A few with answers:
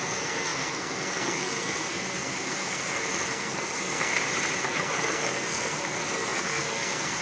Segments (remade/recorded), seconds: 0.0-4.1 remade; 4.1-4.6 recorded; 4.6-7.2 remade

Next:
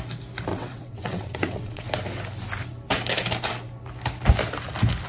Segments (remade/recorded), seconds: 0.0-0.5 recorded; 0.5-1.8 remade; 1.8-5.1 recorded